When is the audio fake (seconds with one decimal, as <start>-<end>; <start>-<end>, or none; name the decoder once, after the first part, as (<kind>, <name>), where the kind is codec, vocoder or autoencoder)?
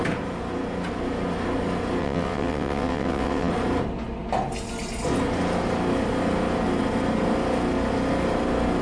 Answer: 2.0-3.5 (vocoder, WaveNeXt)